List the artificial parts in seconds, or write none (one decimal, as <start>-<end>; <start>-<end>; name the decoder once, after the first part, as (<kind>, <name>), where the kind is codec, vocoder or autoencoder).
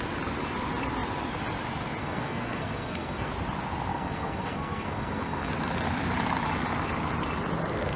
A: 2.0-3.3 (codec, SNAC); 3.9-5.5